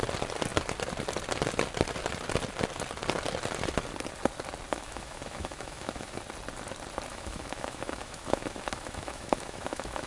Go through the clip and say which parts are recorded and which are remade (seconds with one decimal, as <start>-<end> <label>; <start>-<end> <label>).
0.0-4.7 recorded; 4.7-6.2 remade; 6.2-7.1 recorded; 7.1-10.1 remade